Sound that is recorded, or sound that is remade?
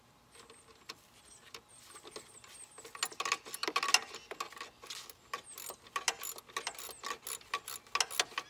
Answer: recorded